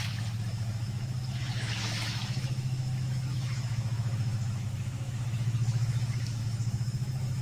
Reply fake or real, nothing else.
fake